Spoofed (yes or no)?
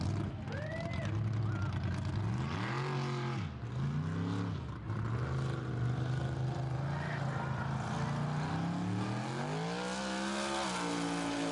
no